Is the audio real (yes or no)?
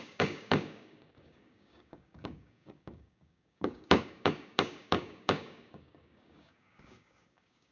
no